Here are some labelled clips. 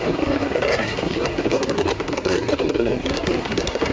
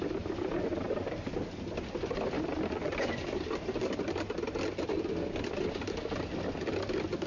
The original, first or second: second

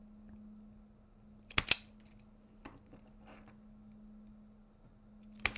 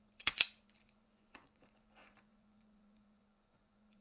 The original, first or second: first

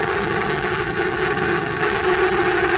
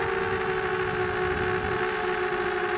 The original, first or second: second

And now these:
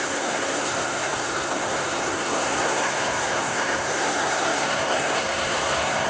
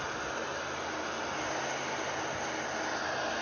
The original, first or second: second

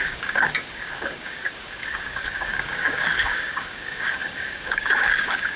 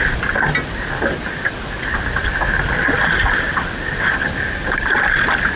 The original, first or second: second